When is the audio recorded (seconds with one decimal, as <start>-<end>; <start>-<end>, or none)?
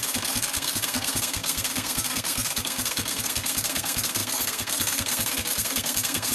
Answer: none